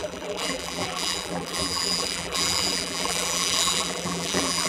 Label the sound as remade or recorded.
remade